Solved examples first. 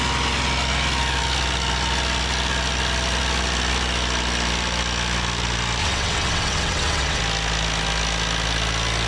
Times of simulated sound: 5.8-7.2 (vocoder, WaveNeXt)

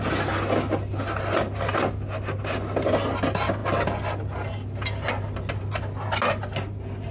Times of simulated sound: none

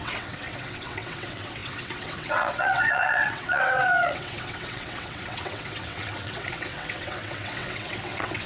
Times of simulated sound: 0.0-8.5 (vocoder, WaveNeXt)

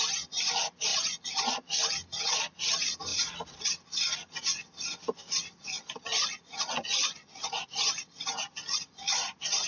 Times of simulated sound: none

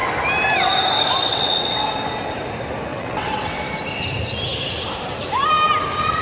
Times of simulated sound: 1.3-1.9 (vocoder, WaveNeXt); 2.9-3.6